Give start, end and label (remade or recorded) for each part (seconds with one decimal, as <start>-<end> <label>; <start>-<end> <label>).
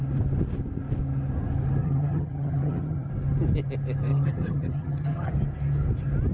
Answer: 0.0-1.8 recorded; 1.8-3.1 remade; 3.1-4.1 recorded; 4.1-5.3 remade; 5.3-6.3 recorded